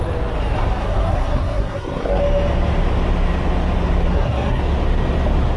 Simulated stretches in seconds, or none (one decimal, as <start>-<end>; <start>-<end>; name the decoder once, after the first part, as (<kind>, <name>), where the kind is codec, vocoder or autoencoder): 0.8-2.2 (codec, SNAC); 4.1-4.6